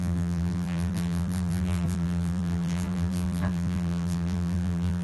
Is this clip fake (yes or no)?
yes